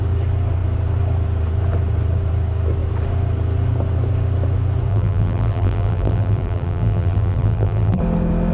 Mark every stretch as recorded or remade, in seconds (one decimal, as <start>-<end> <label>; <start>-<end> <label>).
0.0-4.9 recorded; 4.9-8.0 remade; 8.0-8.5 recorded